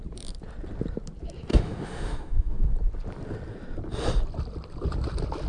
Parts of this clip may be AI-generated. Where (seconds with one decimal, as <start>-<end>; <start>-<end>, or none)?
1.5-2.7